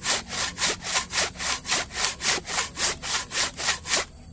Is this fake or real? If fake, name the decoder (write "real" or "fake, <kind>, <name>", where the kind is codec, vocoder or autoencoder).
real